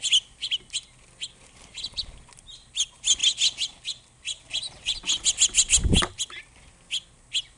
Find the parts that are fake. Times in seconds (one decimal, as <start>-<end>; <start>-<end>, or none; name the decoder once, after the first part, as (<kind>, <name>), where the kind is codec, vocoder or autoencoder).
none